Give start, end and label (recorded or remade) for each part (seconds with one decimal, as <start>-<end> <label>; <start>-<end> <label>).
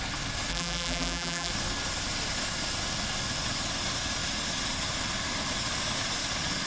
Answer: 0.0-0.5 recorded; 0.5-1.5 remade; 1.5-6.7 recorded